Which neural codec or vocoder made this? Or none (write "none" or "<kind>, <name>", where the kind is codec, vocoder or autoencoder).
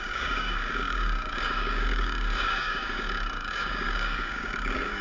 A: codec, DAC